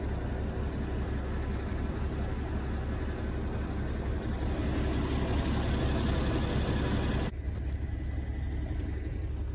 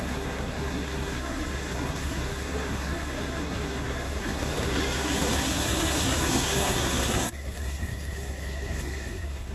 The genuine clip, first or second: first